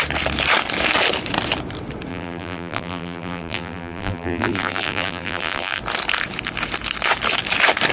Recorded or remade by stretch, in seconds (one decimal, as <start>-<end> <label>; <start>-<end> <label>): 0.0-2.1 recorded; 2.1-5.8 remade; 5.8-7.9 recorded